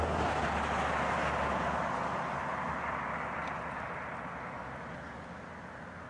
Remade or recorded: recorded